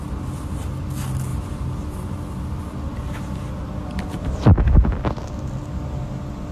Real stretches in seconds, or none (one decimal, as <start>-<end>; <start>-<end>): 0.0-6.5